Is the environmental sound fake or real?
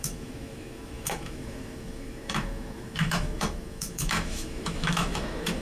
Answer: fake